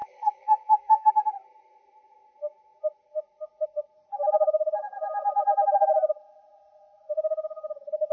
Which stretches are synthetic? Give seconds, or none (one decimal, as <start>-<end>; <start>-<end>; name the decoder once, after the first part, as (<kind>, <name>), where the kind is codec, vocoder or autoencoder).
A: 0.0-1.1 (codec, SNAC)